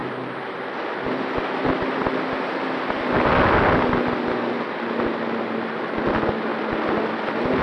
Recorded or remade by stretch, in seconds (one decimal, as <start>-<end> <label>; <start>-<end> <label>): 0.0-7.6 recorded